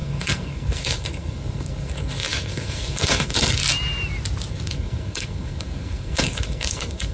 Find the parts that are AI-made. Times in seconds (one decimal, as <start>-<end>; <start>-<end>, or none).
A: 0.0-3.6; 4.5-7.1

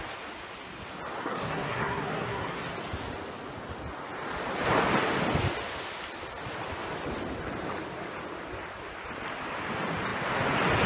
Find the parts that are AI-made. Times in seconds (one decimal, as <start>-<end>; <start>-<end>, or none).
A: 1.2-2.6

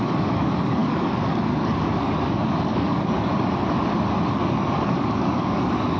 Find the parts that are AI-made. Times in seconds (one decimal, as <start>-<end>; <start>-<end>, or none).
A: 0.0-3.3; 4.3-6.0

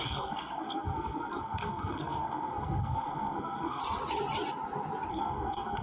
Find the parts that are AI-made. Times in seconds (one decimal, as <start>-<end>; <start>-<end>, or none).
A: 0.0-3.8; 5.1-5.8

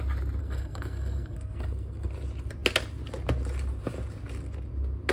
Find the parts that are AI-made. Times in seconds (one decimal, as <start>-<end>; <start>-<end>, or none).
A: 0.4-2.1

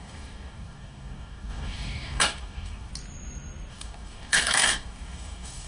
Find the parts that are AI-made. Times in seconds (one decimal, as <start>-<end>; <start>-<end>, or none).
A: 0.0-2.9; 3.7-5.7

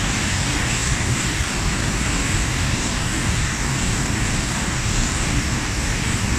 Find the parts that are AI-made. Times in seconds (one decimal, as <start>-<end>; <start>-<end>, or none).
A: 0.0-6.4